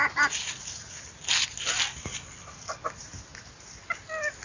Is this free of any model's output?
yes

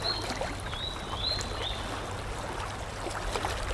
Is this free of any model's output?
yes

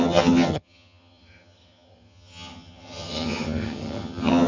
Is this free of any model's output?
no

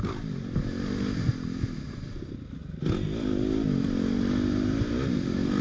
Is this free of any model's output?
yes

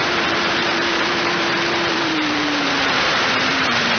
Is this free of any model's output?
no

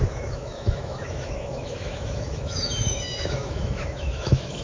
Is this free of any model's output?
no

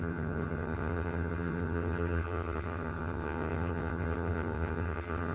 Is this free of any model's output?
no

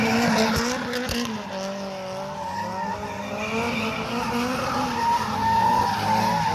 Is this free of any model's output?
yes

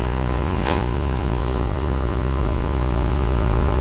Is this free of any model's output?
no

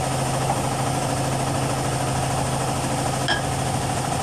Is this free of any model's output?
yes